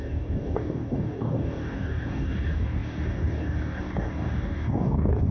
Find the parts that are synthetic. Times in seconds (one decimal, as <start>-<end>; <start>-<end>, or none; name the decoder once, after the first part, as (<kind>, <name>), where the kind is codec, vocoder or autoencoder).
0.0-5.3 (codec, DAC)